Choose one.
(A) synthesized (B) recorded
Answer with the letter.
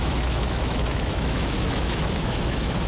A